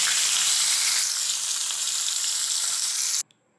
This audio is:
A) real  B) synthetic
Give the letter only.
A